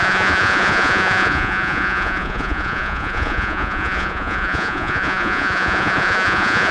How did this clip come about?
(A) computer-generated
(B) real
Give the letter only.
A